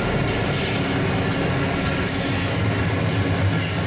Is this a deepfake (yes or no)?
no